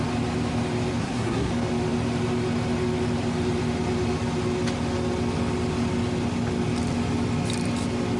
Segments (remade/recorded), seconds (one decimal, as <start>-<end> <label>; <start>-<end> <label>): 0.0-1.0 recorded; 1.0-1.5 remade; 1.5-8.2 recorded